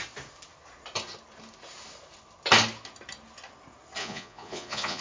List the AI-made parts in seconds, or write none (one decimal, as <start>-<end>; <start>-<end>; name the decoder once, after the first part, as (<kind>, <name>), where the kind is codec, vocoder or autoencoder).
4.0-5.0 (vocoder, Vocos)

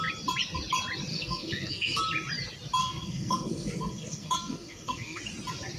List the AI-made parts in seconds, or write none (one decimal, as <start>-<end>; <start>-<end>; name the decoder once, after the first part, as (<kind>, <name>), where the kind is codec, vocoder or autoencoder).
1.1-2.0 (codec, SNAC); 2.8-5.2

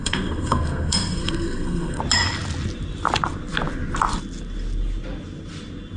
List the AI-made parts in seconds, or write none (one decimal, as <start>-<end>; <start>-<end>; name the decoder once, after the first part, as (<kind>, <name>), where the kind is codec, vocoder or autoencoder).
0.0-2.0 (codec, SNAC)

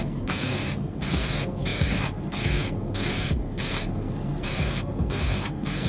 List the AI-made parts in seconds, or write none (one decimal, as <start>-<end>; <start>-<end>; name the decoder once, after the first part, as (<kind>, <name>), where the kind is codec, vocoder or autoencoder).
0.0-5.9 (codec, SNAC)

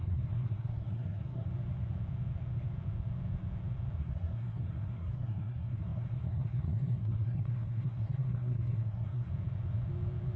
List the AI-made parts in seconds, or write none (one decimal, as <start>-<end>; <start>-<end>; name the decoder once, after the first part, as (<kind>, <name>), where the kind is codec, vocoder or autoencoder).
0.0-1.5 (codec, SNAC); 4.0-9.3